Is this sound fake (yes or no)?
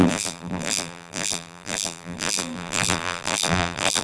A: yes